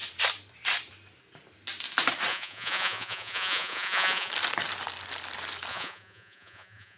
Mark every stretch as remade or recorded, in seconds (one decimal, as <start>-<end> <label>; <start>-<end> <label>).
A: 0.0-2.3 recorded; 2.3-4.3 remade; 4.3-5.7 recorded; 5.7-7.0 remade